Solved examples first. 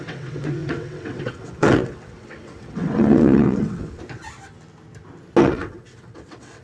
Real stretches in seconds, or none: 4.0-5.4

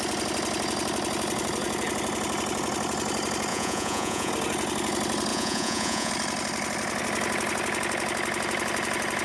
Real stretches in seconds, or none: 0.0-3.5; 4.3-5.3; 6.1-9.2